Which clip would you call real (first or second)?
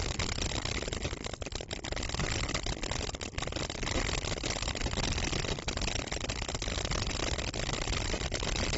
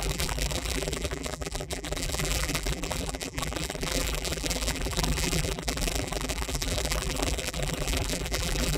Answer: first